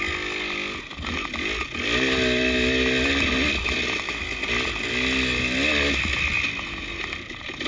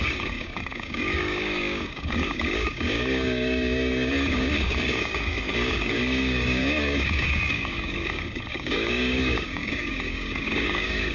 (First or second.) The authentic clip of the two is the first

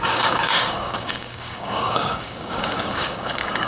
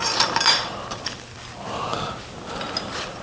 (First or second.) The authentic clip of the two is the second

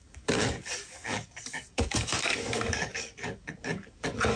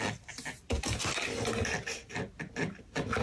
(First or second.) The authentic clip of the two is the second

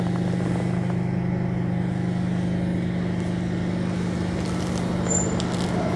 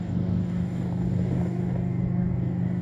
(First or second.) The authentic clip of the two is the first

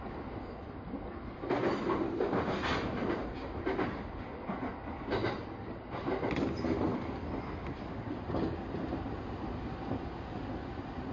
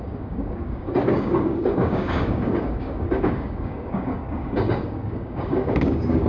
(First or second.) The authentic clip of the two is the first